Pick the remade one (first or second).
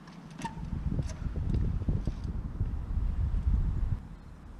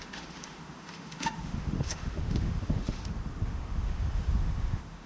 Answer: second